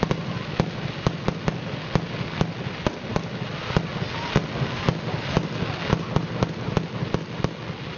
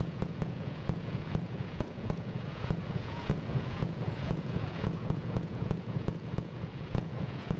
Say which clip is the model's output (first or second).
second